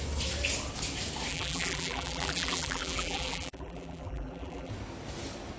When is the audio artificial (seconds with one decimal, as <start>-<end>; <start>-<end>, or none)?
1.3-4.7